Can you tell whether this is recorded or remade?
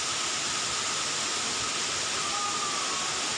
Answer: recorded